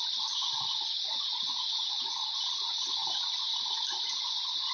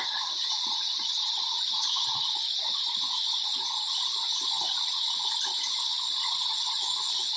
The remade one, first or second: second